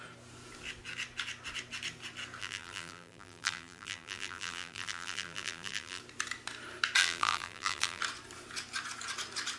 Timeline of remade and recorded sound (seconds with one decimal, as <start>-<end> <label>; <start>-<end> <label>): 0.0-2.4 recorded; 2.4-6.0 remade; 6.0-7.0 recorded; 7.0-8.0 remade; 8.0-9.6 recorded